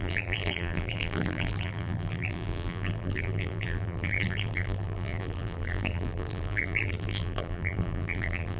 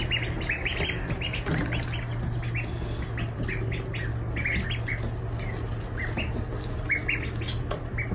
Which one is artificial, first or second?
first